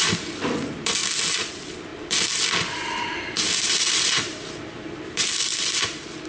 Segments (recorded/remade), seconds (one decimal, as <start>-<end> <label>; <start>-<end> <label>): 0.0-1.0 remade; 1.0-1.5 recorded; 1.5-5.5 remade; 5.5-6.3 recorded